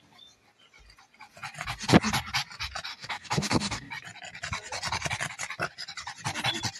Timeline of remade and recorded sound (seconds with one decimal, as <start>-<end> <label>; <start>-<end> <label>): 0.0-2.9 recorded; 2.9-3.9 remade; 3.9-6.8 recorded